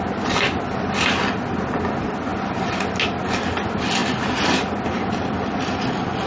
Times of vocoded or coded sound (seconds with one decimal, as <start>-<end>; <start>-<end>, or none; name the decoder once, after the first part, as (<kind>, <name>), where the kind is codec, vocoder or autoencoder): none